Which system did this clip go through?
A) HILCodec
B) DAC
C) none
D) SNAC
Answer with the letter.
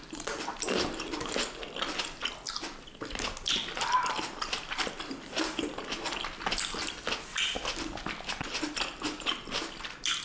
C